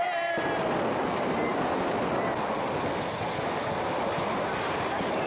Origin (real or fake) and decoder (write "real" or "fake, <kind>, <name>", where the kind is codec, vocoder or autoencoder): real